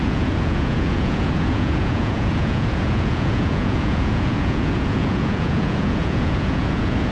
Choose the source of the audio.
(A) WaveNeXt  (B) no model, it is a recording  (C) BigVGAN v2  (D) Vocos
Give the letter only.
D